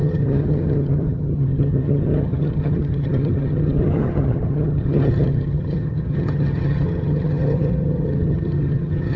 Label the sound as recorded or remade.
remade